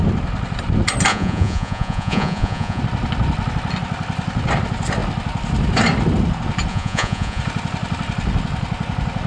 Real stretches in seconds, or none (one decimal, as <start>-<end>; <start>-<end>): 0.0-1.1; 2.8-6.7; 7.4-9.3